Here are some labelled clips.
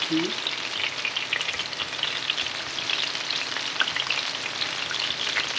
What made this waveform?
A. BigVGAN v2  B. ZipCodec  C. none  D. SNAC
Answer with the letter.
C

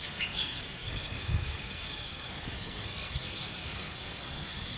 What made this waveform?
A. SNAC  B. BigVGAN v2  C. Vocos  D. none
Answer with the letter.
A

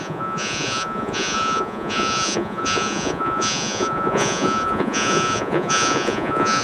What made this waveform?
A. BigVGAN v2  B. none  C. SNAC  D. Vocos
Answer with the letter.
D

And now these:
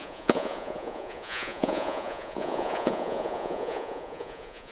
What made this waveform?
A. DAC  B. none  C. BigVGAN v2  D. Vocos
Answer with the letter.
D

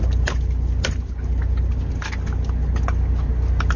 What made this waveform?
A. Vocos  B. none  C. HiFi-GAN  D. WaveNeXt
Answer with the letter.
B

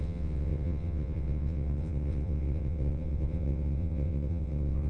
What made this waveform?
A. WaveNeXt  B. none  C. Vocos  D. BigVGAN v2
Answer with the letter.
A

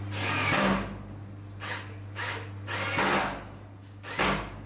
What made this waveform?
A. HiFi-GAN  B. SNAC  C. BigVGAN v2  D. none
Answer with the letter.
D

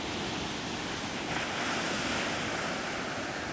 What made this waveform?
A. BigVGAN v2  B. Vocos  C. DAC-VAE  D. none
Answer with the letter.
D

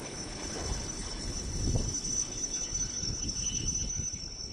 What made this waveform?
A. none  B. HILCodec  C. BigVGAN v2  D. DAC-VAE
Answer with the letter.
B